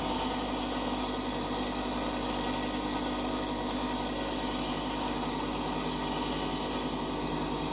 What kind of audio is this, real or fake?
real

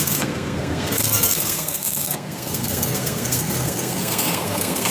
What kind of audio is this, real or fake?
fake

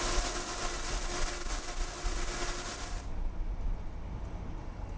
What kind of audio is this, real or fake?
real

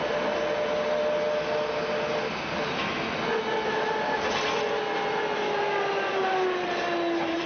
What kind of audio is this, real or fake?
real